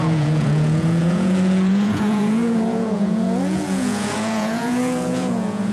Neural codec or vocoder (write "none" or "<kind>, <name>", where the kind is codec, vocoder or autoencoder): vocoder, Vocos